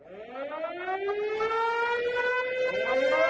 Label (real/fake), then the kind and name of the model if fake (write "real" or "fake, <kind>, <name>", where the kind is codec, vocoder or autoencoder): real